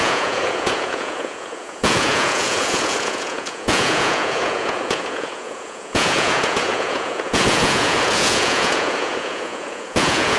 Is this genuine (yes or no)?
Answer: no